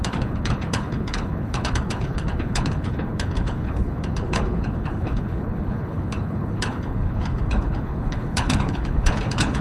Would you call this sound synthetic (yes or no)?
yes